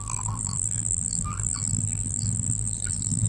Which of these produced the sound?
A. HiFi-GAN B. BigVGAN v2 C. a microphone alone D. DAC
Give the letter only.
B